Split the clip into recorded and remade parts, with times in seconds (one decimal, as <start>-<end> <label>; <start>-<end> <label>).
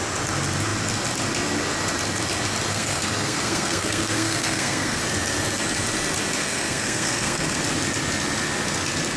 0.0-2.7 recorded; 2.7-5.0 remade; 5.0-6.4 recorded; 6.4-7.6 remade; 7.6-9.2 recorded